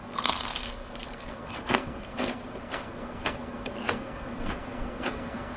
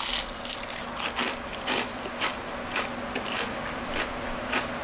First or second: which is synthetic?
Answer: first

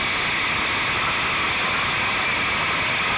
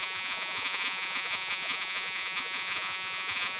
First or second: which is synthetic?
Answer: second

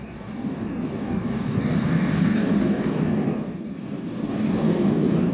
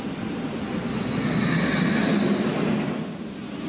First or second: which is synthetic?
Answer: first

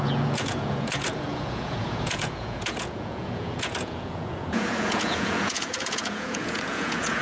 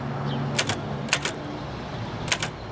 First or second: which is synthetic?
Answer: first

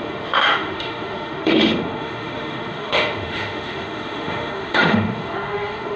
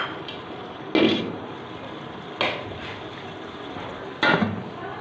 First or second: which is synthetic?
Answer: first